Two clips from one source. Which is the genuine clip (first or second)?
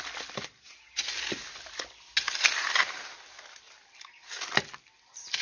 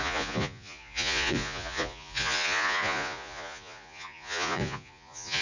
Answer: first